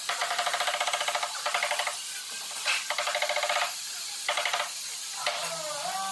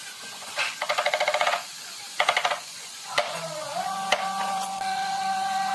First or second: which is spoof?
second